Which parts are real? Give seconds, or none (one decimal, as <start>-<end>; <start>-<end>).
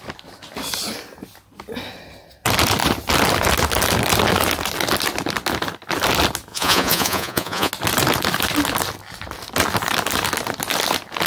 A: 0.0-6.5; 7.7-11.3